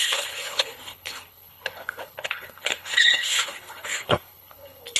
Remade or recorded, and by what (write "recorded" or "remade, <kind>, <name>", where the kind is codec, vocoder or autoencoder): remade, codec, HILCodec